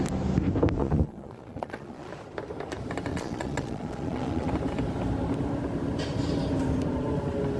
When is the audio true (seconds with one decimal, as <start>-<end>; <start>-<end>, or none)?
0.0-0.8; 2.1-3.1; 4.5-7.6